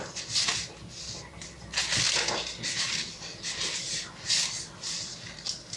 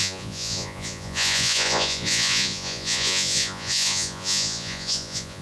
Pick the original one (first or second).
first